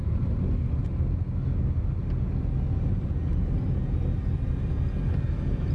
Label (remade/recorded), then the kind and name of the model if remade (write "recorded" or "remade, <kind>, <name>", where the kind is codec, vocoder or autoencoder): recorded